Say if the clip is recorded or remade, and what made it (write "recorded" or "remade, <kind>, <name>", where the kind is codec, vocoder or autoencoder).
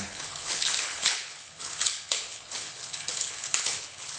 remade, codec, HILCodec